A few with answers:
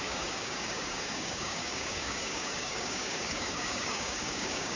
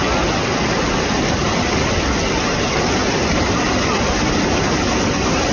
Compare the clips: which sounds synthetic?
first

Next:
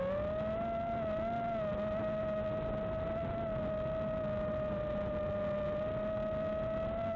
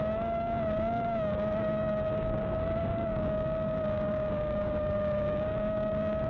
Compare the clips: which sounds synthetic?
second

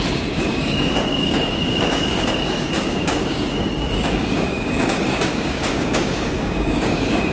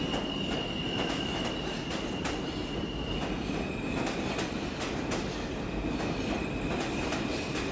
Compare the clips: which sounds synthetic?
first